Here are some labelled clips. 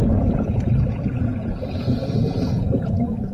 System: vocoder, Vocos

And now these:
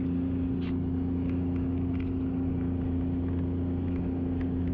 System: none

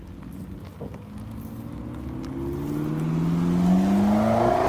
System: none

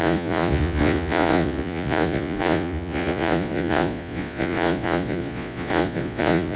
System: vocoder, Vocos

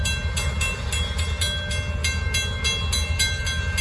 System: none